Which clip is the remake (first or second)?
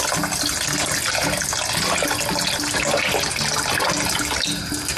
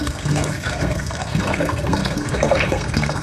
second